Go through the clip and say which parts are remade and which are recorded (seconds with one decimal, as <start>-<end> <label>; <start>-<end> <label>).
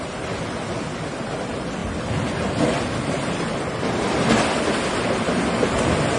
0.0-6.2 recorded